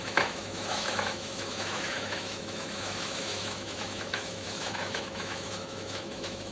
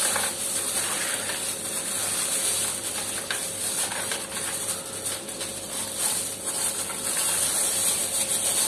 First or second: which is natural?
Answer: second